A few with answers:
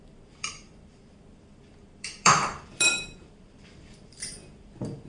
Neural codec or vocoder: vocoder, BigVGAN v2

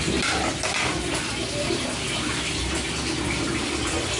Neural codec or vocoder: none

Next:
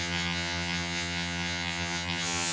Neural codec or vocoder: vocoder, HiFi-GAN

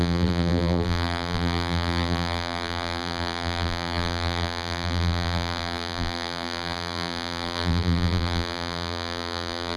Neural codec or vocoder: vocoder, BigVGAN v2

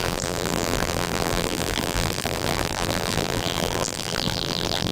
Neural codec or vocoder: vocoder, BigVGAN v2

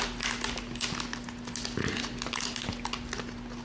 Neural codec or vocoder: none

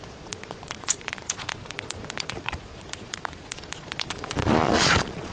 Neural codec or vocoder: vocoder, Vocos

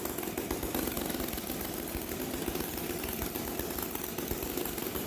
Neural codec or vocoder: none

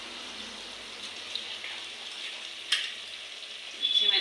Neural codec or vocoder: none